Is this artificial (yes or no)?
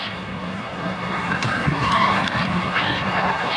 yes